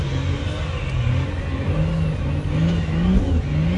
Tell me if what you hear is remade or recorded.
recorded